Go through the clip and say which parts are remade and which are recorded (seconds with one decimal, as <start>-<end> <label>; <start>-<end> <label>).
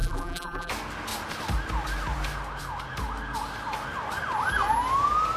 0.0-0.7 remade; 0.7-5.4 recorded